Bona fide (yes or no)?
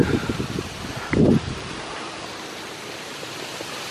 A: yes